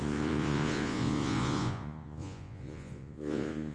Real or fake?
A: fake